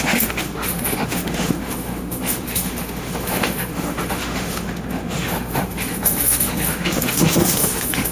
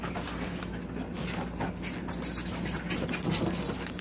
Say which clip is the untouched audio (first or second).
second